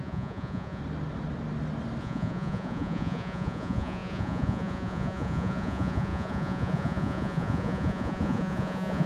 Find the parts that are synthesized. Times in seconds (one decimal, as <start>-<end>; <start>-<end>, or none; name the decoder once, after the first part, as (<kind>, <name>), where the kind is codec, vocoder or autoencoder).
0.0-0.8 (vocoder, Vocos); 2.0-9.1